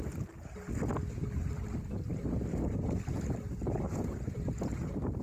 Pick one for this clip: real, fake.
real